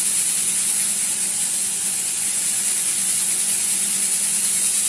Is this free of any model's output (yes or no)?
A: no